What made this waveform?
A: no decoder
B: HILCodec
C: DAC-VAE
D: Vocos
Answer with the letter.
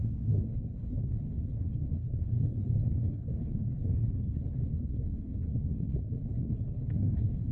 B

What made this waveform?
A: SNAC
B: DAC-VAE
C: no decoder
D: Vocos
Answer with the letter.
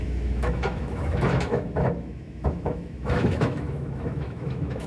B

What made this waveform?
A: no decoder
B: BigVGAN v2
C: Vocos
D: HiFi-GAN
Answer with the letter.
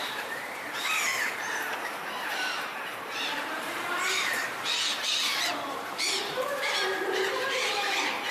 B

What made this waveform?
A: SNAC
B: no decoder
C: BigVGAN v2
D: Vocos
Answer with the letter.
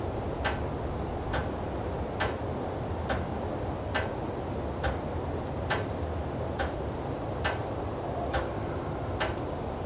B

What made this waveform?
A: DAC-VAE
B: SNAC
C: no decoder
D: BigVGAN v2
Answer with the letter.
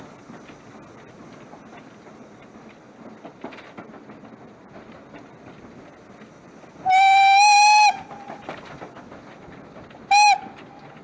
C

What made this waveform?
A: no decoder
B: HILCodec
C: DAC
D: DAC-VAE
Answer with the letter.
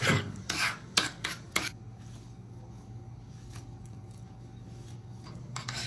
C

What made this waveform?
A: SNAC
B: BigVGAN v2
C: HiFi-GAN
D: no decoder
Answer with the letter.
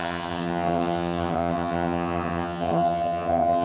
C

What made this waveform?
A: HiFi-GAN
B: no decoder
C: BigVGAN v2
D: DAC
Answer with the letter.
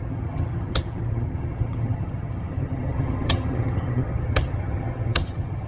A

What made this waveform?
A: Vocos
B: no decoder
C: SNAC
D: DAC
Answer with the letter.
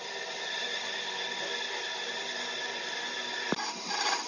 B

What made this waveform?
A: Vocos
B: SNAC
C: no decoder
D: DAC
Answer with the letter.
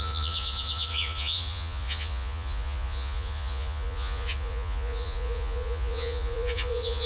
A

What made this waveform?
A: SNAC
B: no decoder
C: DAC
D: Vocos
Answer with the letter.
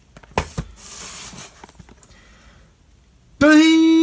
B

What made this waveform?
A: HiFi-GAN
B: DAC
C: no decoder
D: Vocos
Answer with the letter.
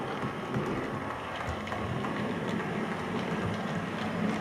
C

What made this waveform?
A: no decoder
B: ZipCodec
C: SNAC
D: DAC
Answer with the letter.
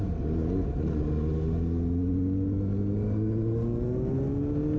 A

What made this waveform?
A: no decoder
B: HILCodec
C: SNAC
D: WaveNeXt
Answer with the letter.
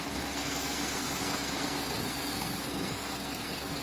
C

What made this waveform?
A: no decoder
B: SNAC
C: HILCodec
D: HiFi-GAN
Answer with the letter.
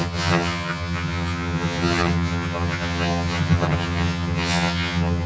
D